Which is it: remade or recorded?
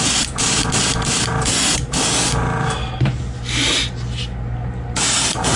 recorded